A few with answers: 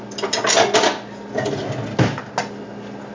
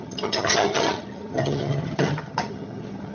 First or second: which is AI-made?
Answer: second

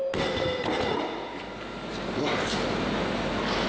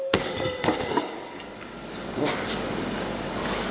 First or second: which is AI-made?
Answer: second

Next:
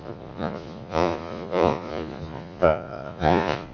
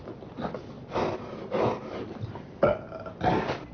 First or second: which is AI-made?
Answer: first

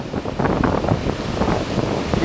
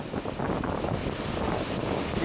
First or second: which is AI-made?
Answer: first